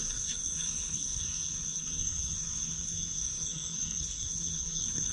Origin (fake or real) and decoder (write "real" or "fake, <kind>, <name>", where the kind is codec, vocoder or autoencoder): fake, codec, SNAC